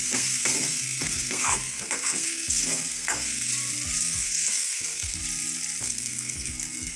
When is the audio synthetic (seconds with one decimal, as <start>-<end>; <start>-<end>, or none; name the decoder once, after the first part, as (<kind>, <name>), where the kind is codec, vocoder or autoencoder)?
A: 0.0-3.5 (codec, SNAC); 4.0-5.2; 5.8-7.0